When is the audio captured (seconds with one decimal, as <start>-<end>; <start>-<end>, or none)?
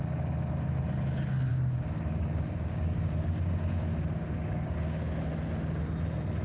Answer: 0.0-1.5; 5.3-6.4